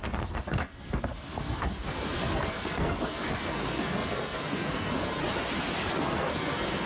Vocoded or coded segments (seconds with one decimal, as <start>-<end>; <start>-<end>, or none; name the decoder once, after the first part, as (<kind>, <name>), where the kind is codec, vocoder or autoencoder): 0.0-5.2 (codec, SNAC); 5.9-6.9

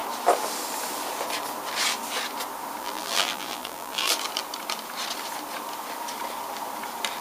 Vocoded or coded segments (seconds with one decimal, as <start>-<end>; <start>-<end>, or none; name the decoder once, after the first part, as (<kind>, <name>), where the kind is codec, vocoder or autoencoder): 2.8-4.1 (vocoder, BigVGAN v2)

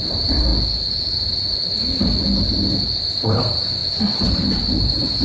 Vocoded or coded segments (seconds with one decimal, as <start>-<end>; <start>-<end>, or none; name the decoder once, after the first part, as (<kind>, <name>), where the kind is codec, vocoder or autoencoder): 0.0-0.5 (vocoder, BigVGAN v2); 3.0-3.8; 4.3-5.2

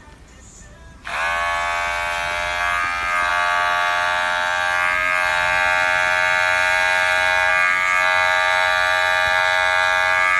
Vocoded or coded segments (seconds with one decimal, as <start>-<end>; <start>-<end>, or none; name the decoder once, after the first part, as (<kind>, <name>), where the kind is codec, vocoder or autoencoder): none